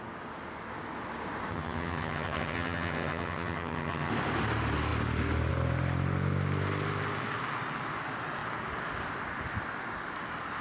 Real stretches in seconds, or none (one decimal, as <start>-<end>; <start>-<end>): 0.0-1.5; 4.1-10.6